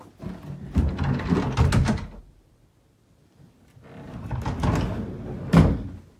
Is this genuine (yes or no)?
yes